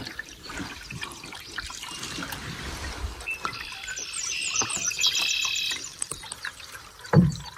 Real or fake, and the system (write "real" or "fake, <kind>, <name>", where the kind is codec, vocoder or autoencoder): fake, vocoder, BigVGAN v2